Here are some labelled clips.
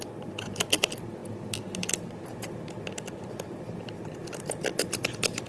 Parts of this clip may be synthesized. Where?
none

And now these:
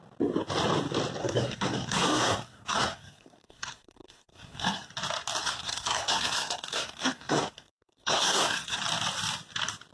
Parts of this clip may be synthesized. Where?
1.2-4.9; 5.4-8.8

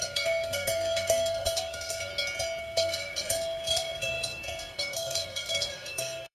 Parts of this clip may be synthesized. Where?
0.0-2.1; 2.6-6.3

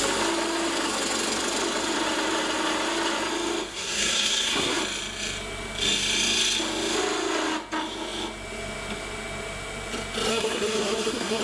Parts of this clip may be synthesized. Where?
3.7-4.8; 10.3-11.4

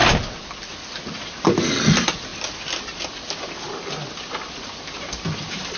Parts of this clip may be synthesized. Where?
none

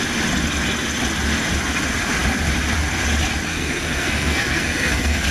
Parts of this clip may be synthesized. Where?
3.5-5.3